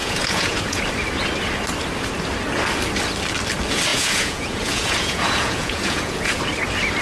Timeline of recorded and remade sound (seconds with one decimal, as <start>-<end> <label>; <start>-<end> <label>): 0.0-0.8 remade; 0.8-3.9 recorded; 3.9-6.4 remade; 6.4-7.0 recorded